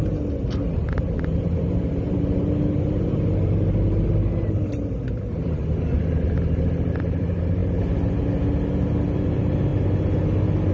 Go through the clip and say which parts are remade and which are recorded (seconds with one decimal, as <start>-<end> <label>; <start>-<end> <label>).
0.0-10.7 recorded

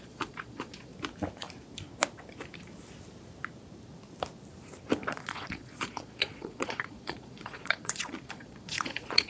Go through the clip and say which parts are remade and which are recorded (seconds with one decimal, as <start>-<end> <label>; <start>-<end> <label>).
0.0-0.9 remade; 0.9-5.1 recorded; 5.1-9.3 remade

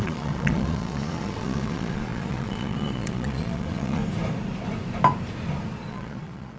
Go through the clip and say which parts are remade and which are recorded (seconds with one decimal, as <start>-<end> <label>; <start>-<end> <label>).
0.0-4.0 remade; 4.0-5.9 recorded; 5.9-6.6 remade

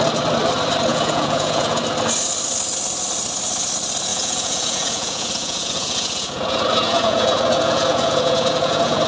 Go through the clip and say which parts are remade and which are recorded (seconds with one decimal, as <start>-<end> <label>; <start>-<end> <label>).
0.0-0.9 recorded; 0.9-1.8 remade; 1.8-4.1 recorded; 4.1-9.1 remade

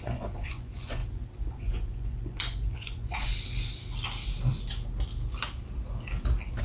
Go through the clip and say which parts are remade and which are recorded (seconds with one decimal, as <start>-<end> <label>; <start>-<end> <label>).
0.0-1.0 remade; 1.0-1.5 recorded; 1.5-3.3 remade; 3.3-6.6 recorded